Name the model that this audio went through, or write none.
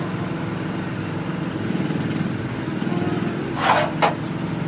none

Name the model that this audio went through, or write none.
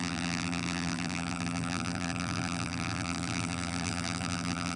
vocoder, BigVGAN v2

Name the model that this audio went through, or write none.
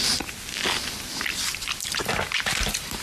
none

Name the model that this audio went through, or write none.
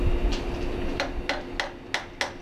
none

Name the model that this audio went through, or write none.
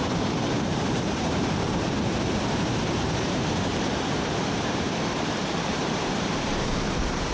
vocoder, BigVGAN v2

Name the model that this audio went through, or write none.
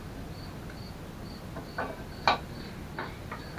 none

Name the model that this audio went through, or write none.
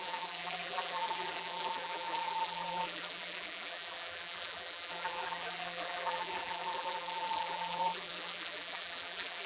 vocoder, BigVGAN v2